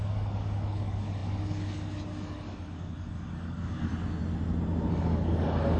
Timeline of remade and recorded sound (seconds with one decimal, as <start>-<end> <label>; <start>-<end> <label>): 0.0-3.9 remade; 3.9-4.9 recorded; 4.9-5.8 remade